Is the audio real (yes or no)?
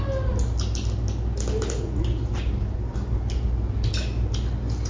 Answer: yes